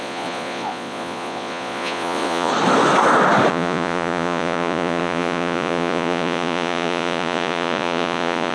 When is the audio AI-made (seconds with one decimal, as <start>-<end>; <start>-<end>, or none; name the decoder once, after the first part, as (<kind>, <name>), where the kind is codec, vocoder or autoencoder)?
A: 0.0-2.5 (vocoder, Vocos); 3.5-8.5